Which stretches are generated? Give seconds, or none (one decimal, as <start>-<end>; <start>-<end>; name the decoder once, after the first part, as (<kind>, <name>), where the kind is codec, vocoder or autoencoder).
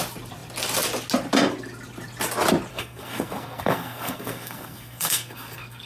2.7-5.9 (codec, SNAC)